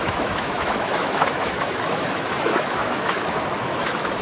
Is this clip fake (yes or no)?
yes